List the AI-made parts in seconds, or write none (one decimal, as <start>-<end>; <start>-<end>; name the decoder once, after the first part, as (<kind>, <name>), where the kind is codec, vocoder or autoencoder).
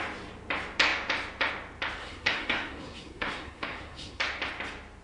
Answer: 2.0-4.2 (codec, SNAC)